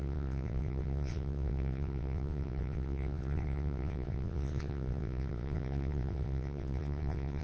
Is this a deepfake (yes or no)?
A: yes